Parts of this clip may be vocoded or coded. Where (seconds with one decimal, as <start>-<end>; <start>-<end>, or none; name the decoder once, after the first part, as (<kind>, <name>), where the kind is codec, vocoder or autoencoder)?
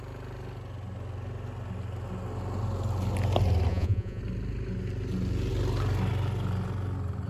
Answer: 3.7-4.2 (vocoder, Vocos)